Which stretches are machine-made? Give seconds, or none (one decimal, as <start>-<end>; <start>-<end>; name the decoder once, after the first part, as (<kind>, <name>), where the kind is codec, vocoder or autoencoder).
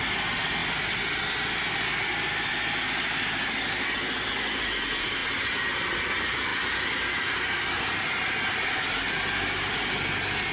none